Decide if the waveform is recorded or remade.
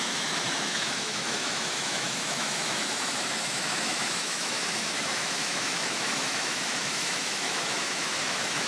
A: remade